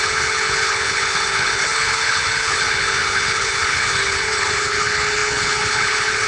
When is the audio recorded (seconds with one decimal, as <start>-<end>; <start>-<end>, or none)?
none